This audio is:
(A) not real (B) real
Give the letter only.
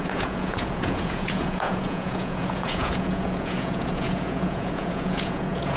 A